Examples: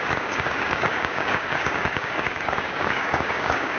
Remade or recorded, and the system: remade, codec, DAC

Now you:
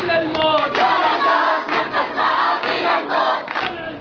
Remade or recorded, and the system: remade, codec, DAC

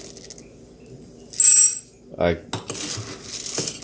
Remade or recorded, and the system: recorded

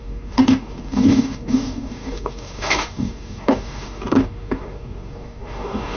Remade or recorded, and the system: remade, codec, DAC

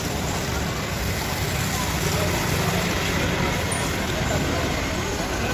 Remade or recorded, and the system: recorded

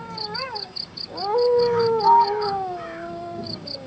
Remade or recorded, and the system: remade, codec, DAC